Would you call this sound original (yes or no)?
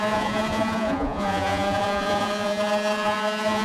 no